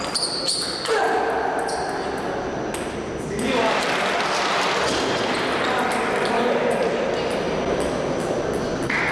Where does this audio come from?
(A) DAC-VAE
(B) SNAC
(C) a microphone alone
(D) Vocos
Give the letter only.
C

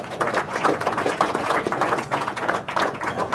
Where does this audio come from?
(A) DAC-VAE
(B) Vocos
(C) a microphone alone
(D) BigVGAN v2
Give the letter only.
B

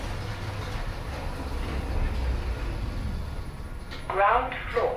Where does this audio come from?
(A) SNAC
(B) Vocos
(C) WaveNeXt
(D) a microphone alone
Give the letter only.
D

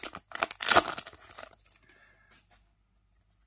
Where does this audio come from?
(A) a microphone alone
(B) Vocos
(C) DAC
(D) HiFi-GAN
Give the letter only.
A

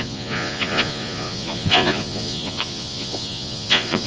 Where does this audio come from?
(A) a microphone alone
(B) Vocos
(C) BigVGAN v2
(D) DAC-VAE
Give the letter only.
B